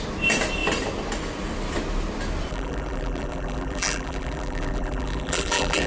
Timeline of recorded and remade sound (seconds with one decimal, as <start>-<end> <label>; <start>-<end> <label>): 0.0-2.5 recorded; 2.5-5.9 remade